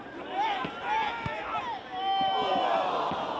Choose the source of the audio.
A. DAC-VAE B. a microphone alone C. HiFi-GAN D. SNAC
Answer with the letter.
B